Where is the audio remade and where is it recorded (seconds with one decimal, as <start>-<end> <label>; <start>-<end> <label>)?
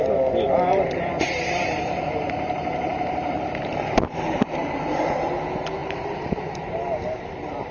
0.0-0.7 recorded; 0.7-5.3 remade; 5.3-5.8 recorded; 5.8-7.0 remade; 7.0-7.7 recorded